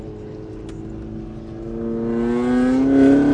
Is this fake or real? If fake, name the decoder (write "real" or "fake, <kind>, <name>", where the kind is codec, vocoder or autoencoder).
real